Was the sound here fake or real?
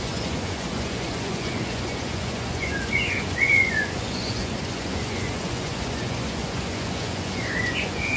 fake